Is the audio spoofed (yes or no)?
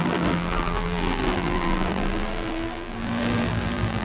yes